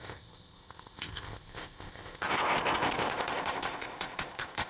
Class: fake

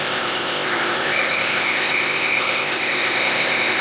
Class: fake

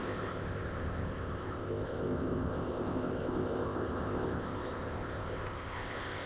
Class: fake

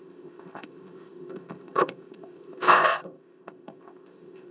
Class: fake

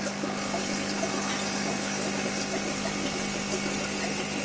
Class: real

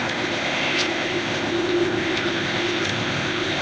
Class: fake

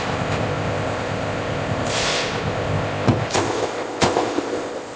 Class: fake